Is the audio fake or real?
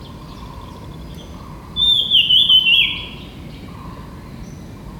real